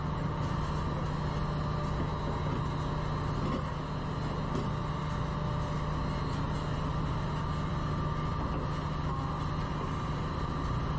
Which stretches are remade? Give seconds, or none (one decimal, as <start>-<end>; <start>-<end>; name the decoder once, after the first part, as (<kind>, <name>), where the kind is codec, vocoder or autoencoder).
none